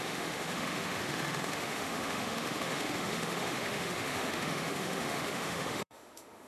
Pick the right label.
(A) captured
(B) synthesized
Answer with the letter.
B